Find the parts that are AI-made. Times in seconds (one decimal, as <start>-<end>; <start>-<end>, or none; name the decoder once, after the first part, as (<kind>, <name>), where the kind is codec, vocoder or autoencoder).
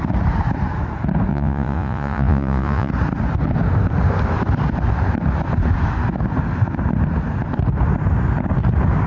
1.3-2.9 (vocoder, Vocos)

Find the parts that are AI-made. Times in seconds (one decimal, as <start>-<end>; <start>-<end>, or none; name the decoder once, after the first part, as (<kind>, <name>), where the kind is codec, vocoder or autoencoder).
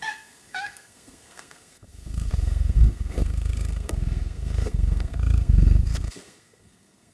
0.0-7.1 (codec, SNAC)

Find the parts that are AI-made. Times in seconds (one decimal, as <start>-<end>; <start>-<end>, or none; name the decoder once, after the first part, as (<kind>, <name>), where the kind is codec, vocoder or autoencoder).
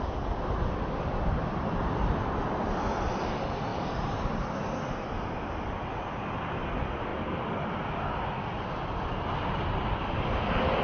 none